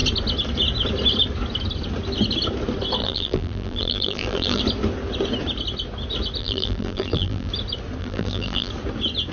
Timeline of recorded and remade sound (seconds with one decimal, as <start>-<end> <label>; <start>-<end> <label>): 0.0-3.0 recorded; 3.0-4.6 remade; 4.6-6.4 recorded; 6.4-7.5 remade; 7.5-8.0 recorded; 8.0-8.7 remade; 8.7-9.3 recorded